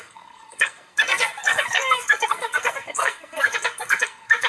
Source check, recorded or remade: remade